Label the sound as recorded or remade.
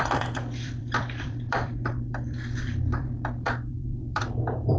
remade